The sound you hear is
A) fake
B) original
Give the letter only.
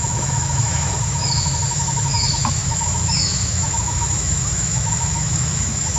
A